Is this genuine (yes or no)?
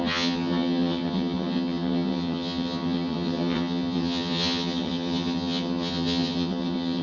no